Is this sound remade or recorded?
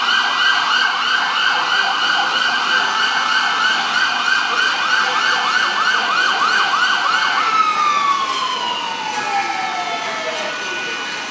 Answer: recorded